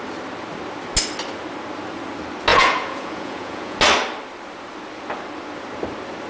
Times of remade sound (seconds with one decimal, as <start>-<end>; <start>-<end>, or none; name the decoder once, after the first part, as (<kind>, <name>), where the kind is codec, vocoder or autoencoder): 2.5-3.8 (vocoder, Vocos)